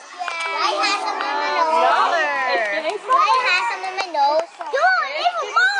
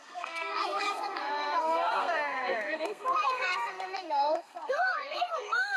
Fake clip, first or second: second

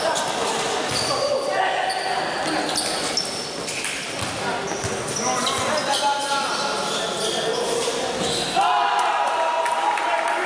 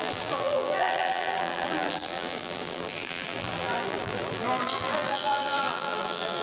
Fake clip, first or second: second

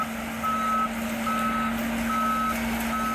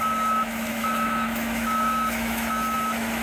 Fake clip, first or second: second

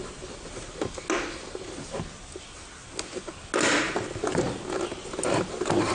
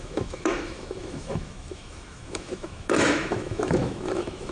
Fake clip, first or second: second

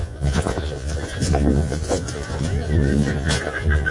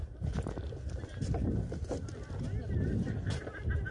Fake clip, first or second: first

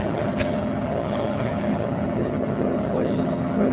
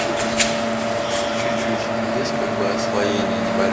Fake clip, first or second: first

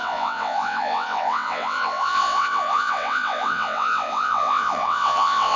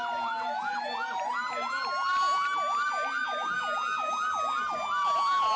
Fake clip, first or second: first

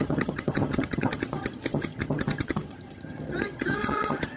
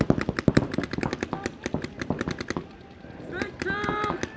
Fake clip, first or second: first